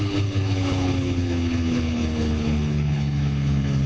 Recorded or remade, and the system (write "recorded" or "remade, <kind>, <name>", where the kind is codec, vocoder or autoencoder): remade, codec, HILCodec